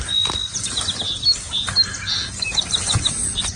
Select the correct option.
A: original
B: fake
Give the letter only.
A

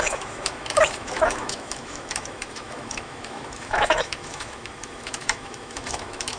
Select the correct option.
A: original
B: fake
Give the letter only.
B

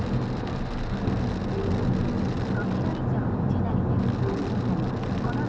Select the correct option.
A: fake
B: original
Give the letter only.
B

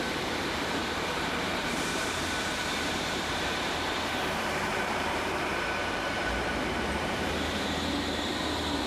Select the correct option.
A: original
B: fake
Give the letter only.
B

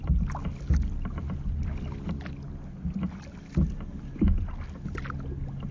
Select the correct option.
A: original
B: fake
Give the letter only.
A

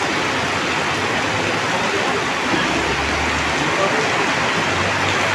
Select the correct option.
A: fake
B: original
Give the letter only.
B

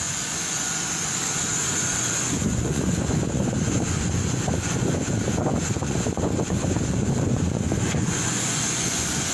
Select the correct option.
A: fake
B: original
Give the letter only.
A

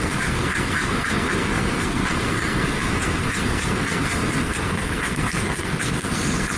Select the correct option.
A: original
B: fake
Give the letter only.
B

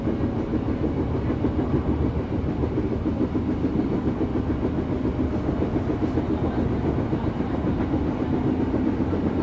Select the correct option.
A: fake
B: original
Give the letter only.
B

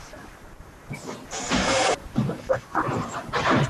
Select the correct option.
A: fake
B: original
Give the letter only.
A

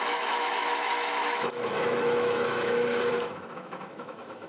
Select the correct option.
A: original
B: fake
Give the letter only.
B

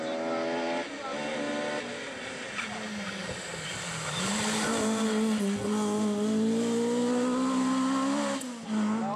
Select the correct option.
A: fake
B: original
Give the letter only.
B